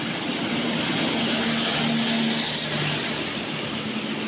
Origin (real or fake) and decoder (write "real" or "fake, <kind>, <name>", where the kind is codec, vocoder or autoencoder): real